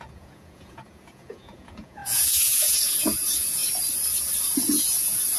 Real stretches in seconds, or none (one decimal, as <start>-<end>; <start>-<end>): 3.6-4.6